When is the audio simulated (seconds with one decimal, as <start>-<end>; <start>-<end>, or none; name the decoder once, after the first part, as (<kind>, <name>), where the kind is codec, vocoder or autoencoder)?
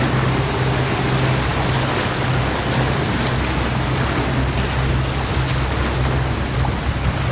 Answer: none